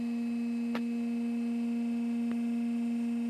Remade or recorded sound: recorded